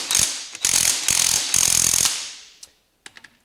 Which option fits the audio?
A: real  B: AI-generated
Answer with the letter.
A